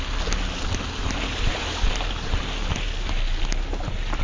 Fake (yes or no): no